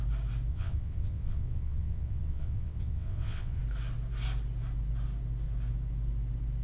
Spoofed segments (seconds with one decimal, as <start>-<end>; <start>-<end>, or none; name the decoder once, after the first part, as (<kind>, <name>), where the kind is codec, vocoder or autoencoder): 0.5-3.6 (vocoder, WaveNeXt)